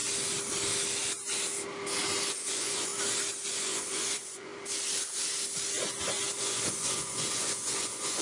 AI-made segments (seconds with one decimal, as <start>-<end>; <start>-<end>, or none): 2.3-2.9; 3.5-4.5; 6.4-8.2